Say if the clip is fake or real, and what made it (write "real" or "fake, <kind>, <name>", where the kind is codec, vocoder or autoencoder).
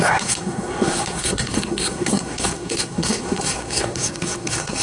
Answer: fake, codec, SNAC